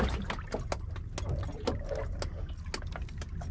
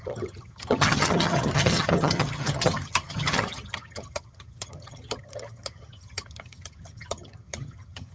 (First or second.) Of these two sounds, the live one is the first